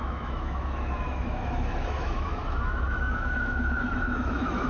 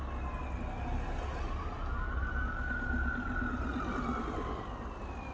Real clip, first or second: second